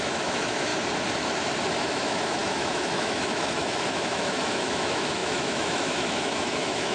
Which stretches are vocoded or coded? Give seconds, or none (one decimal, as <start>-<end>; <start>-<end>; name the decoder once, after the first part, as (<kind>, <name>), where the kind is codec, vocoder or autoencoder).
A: 0.0-0.7 (autoencoder, DAC-VAE); 1.8-6.9